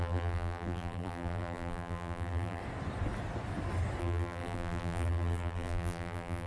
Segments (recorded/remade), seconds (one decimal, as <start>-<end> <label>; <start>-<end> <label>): 0.0-2.6 remade; 2.6-4.0 recorded; 4.0-6.5 remade